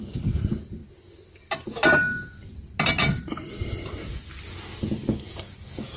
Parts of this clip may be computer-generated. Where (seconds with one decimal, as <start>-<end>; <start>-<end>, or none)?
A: none